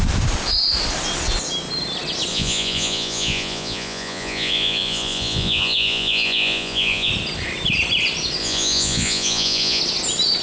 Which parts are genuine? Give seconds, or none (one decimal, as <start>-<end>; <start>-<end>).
0.0-2.3; 7.1-8.4; 9.8-10.4